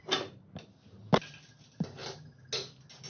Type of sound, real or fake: real